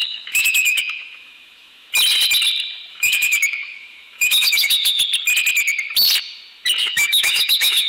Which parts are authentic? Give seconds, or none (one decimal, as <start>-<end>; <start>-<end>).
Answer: 1.9-2.9; 5.0-6.8